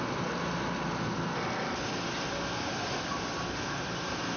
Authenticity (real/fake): real